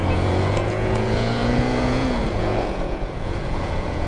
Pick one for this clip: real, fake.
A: fake